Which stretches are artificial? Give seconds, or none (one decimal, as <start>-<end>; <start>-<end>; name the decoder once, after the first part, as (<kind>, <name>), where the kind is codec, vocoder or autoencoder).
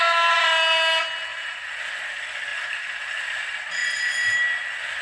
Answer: 1.3-1.8 (vocoder, BigVGAN v2); 2.5-3.1